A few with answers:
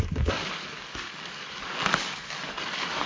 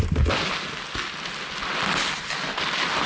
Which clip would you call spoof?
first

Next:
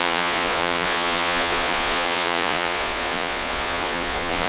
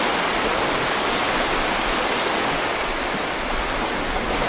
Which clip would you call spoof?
first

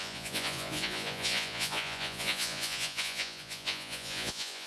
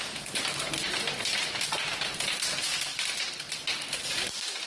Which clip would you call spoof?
first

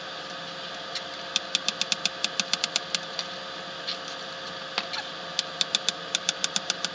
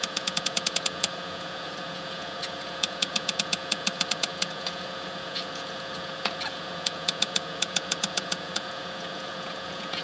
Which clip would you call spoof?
second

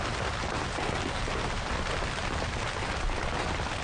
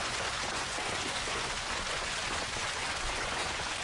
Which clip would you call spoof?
second